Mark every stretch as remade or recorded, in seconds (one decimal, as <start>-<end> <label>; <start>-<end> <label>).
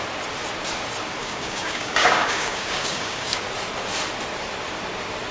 0.0-1.2 recorded; 1.2-3.4 remade; 3.4-5.3 recorded